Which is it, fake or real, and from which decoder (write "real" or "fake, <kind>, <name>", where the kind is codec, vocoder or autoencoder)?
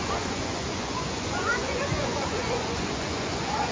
fake, vocoder, Vocos